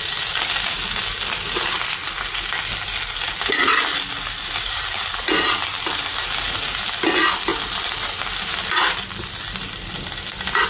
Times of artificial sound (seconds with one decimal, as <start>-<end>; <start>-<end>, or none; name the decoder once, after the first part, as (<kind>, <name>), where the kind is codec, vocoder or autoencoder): none